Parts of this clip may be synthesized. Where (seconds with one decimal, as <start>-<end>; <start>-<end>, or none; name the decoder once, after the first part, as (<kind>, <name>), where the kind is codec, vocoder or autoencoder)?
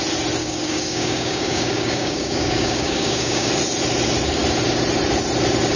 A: 0.4-3.5 (codec, DAC)